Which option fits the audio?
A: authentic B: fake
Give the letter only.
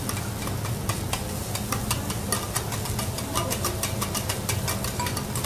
A